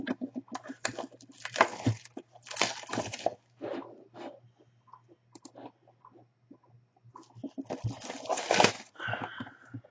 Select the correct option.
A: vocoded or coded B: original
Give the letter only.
B